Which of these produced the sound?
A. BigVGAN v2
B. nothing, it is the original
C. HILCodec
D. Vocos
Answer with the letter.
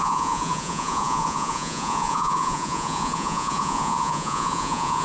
D